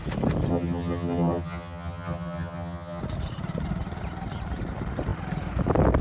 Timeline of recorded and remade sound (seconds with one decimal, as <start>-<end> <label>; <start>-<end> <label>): 0.0-0.5 recorded; 0.5-3.0 remade; 3.0-6.0 recorded